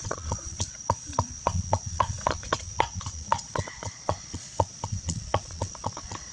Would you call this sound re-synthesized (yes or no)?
yes